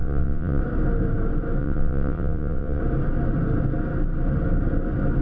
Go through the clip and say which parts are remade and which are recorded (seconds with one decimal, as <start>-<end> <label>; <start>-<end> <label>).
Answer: 0.0-0.6 remade; 0.6-1.6 recorded; 1.6-2.8 remade; 2.8-5.2 recorded